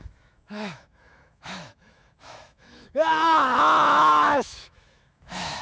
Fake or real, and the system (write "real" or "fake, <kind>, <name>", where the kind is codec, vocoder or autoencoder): fake, autoencoder, DAC-VAE